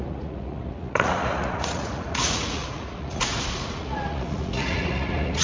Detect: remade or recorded remade